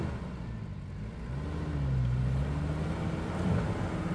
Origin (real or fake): real